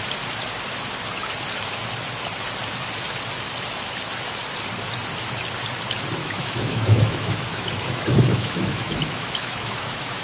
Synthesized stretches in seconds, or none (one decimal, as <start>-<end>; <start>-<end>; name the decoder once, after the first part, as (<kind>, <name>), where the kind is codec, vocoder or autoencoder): 6.2-10.2 (autoencoder, DAC-VAE)